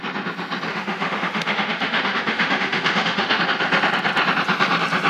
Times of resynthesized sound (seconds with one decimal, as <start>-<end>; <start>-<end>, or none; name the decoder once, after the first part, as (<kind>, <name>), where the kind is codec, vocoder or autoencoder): 0.7-3.4 (autoencoder, DAC-VAE)